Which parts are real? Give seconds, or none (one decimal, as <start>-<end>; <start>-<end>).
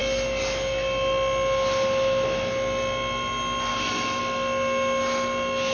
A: 0.0-3.7; 4.2-5.7